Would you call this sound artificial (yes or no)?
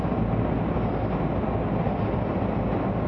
no